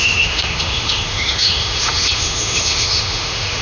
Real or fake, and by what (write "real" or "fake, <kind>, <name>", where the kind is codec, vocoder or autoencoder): fake, autoencoder, DAC-VAE